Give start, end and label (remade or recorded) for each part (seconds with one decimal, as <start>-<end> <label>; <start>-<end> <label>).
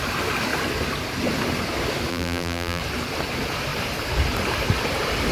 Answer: 0.0-2.1 recorded; 2.1-2.8 remade; 2.8-5.3 recorded